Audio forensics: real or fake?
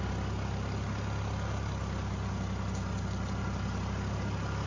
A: real